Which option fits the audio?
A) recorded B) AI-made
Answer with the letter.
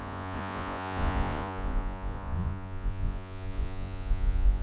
B